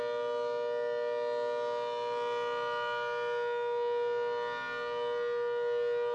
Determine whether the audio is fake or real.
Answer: real